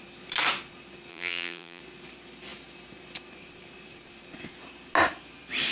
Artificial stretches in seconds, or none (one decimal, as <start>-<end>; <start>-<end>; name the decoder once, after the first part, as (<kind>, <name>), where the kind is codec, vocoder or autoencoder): 1.1-1.8 (vocoder, BigVGAN v2)